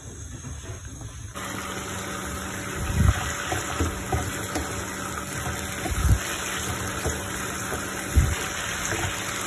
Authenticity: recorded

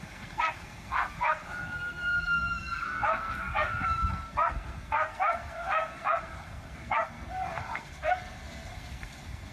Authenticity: remade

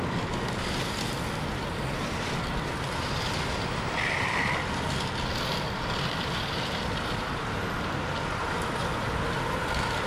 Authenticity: recorded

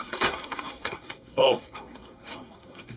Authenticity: remade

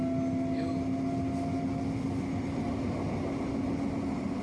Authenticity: recorded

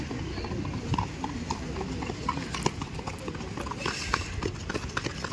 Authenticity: recorded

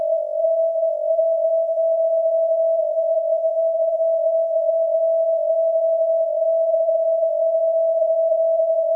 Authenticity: remade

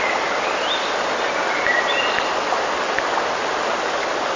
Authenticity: recorded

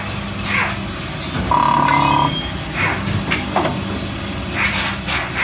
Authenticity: recorded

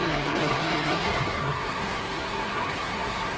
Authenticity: remade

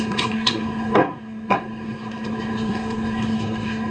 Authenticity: remade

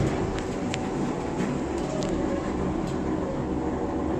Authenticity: recorded